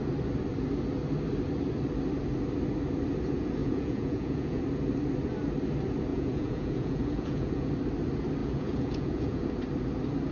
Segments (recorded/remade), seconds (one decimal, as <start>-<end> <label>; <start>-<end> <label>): 0.0-3.6 recorded; 3.6-4.6 remade; 4.6-6.1 recorded; 6.1-7.7 remade; 7.7-8.4 recorded; 8.4-9.5 remade; 9.5-10.3 recorded